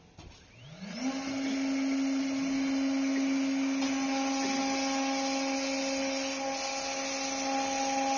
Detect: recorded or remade recorded